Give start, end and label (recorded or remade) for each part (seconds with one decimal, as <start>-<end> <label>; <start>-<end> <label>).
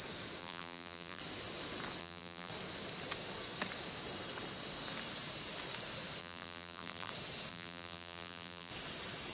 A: 0.0-0.4 recorded; 0.4-1.2 remade; 1.2-2.0 recorded; 2.0-2.5 remade; 2.5-6.2 recorded; 6.2-7.1 remade; 7.1-7.5 recorded; 7.5-8.7 remade; 8.7-9.3 recorded